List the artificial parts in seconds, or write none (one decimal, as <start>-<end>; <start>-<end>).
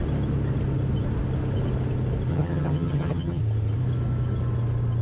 2.3-3.4